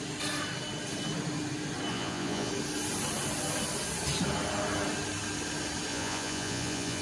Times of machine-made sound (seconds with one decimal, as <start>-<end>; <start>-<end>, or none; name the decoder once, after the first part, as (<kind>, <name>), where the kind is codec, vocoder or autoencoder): 1.9-2.5 (vocoder, Vocos); 5.9-7.0